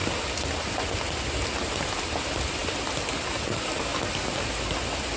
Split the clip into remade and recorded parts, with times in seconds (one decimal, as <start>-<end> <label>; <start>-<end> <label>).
0.0-5.2 recorded